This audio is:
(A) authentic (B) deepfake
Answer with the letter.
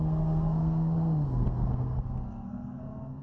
B